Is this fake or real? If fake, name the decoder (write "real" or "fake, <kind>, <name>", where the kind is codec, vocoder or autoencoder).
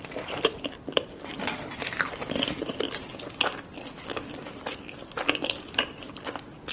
real